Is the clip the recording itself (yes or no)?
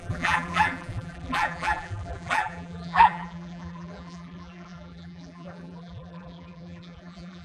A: no